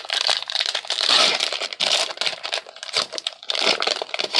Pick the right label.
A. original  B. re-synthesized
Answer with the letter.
B